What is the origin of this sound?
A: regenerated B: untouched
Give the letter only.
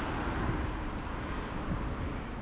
B